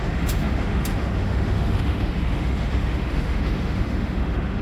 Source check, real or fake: fake